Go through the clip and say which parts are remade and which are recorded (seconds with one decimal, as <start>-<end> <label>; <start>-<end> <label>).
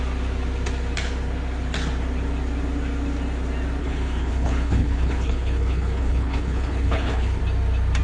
0.0-3.8 recorded; 3.8-7.4 remade; 7.4-8.0 recorded